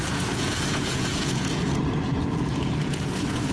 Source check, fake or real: fake